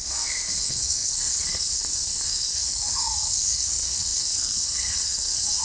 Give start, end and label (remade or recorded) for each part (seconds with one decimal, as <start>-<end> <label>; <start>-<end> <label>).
0.0-5.6 remade